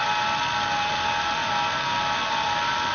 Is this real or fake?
real